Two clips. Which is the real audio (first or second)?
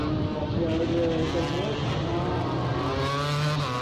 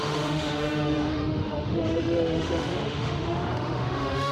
first